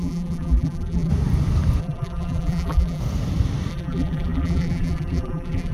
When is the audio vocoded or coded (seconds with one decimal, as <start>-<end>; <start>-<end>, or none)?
0.0-1.1; 1.8-3.0; 3.7-5.7